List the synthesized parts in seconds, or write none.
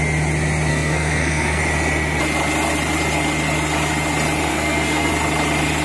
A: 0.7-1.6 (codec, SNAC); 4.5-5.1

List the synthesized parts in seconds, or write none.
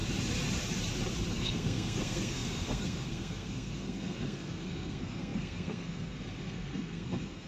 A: 1.3-7.5 (codec, SNAC)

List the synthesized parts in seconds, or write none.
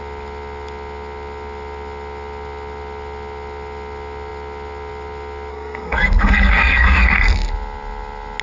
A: 5.5-7.5 (codec, SNAC)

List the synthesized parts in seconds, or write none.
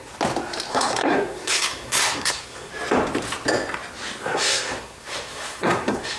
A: 0.7-2.7 (codec, SNAC); 4.2-6.2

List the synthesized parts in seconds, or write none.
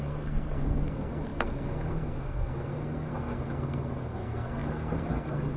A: 0.0-5.6 (codec, SNAC)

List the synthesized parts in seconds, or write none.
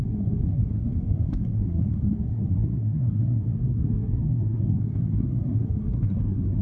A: 0.0-6.6 (codec, SNAC)